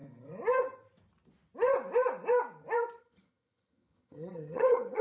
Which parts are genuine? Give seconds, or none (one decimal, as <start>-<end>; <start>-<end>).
0.0-3.0